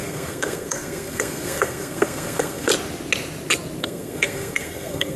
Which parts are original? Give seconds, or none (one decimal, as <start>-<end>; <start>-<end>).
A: 2.7-3.8